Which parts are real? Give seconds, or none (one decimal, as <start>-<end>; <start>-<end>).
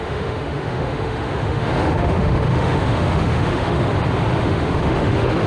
3.9-4.4